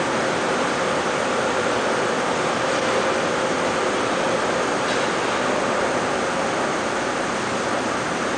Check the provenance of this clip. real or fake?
real